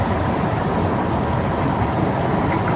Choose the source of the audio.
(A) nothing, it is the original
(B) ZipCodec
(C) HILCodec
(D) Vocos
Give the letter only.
A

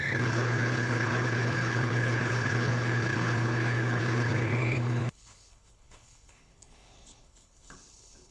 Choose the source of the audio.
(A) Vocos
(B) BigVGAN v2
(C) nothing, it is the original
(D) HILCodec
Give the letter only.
D